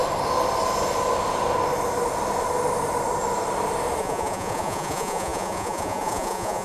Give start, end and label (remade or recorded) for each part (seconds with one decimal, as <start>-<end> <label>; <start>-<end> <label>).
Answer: 0.0-4.0 recorded; 4.0-6.6 remade